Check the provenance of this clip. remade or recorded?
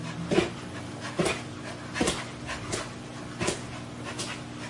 recorded